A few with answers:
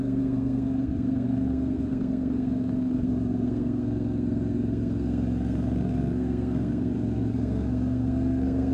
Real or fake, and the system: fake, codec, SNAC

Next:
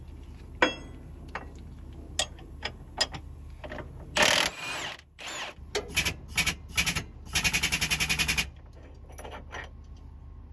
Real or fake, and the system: real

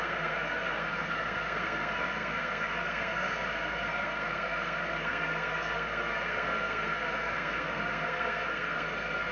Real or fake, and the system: fake, codec, SNAC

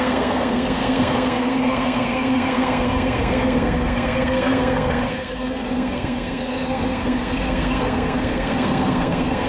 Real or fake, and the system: fake, codec, SNAC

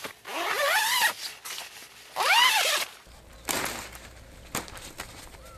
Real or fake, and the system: real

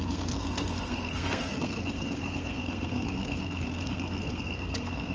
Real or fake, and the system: fake, codec, SNAC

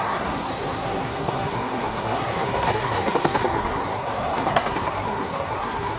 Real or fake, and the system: fake, codec, SNAC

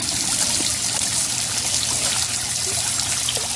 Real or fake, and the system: real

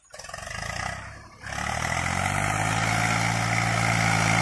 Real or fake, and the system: real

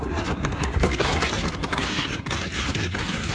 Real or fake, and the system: fake, codec, SNAC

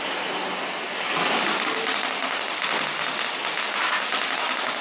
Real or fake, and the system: real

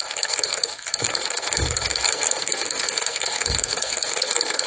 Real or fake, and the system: fake, codec, SNAC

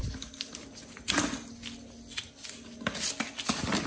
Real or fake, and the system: real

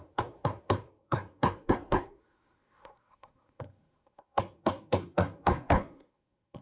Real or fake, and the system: fake, codec, SNAC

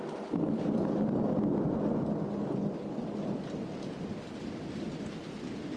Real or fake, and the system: real